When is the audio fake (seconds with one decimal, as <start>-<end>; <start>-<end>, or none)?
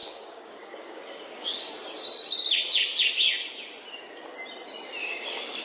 0.0-1.7; 5.0-5.6